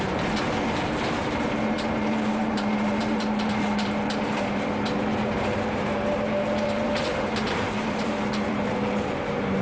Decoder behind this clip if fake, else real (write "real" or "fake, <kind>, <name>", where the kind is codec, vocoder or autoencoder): fake, vocoder, BigVGAN v2